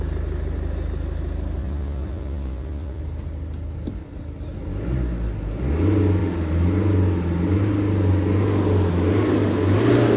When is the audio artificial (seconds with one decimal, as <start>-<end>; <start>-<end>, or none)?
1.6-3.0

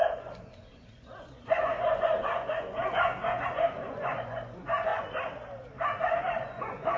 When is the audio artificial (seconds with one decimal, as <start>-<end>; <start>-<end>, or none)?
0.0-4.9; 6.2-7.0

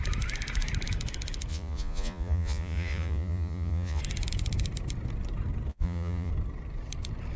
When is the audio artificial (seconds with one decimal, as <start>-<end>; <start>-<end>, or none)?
1.5-4.0; 5.7-6.3

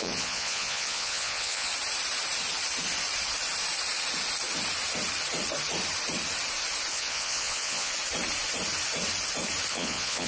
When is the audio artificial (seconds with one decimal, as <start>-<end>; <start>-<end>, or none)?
0.0-1.7; 6.9-7.9; 9.7-10.3

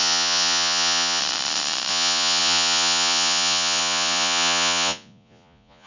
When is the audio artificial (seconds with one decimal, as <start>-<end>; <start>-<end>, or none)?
0.0-1.2; 1.9-5.9

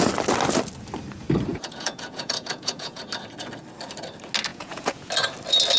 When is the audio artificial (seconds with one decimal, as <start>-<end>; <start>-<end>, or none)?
1.5-3.0; 4.5-5.1

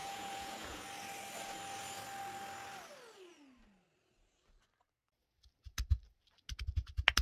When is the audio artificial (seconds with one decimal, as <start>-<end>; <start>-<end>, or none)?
0.0-0.8

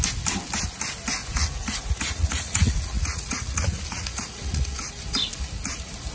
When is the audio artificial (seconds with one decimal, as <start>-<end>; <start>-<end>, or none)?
1.2-4.9